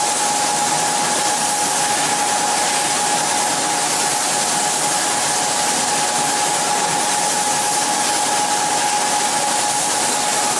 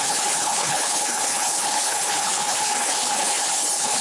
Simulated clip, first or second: second